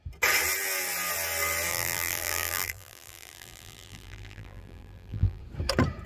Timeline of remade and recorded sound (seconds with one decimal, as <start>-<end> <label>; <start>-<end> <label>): 0.0-1.7 recorded; 1.7-5.4 remade; 5.4-6.1 recorded